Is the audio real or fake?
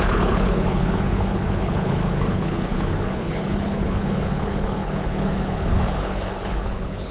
fake